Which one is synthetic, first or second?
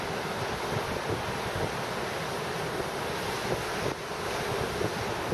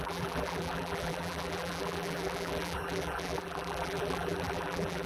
second